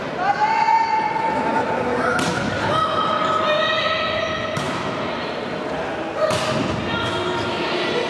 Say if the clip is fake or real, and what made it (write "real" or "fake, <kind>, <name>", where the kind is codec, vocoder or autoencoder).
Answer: real